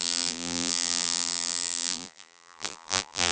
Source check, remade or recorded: remade